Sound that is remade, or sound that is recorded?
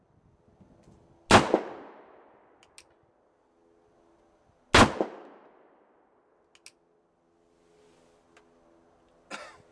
recorded